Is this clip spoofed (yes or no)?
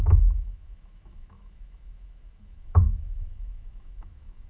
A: yes